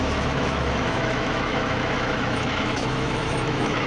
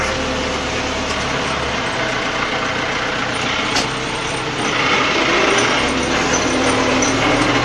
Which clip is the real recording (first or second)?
second